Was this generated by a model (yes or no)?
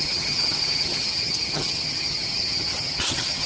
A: yes